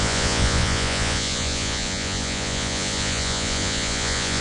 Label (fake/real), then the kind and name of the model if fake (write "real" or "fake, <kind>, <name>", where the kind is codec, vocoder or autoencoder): fake, vocoder, Vocos